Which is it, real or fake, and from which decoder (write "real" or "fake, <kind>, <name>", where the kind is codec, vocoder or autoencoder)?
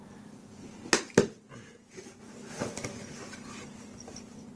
real